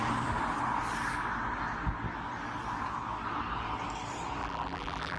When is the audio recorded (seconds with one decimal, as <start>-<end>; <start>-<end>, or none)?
0.0-4.4